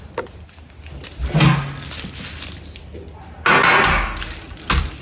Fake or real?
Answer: real